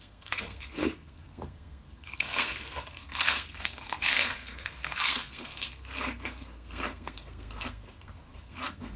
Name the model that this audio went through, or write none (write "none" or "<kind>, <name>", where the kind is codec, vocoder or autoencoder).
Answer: codec, SNAC